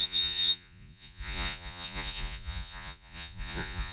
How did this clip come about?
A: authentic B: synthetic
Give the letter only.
B